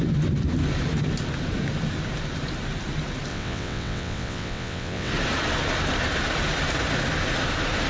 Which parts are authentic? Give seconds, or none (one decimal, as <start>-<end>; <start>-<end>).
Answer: 0.0-3.3; 5.1-7.9